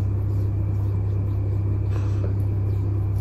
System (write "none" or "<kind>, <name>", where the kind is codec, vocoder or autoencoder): none